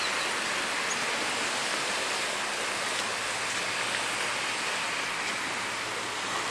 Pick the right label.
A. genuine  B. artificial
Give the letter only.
A